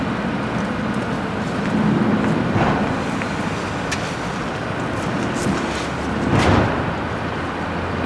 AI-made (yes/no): no